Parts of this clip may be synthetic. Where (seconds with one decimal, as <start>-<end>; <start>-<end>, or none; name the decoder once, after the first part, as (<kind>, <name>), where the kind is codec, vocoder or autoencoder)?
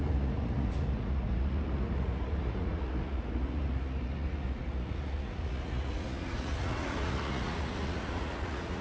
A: 0.0-8.8 (vocoder, Vocos)